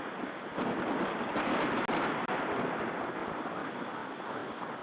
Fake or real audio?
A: real